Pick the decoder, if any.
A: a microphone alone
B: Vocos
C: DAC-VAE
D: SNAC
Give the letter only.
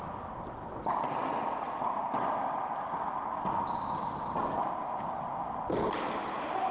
A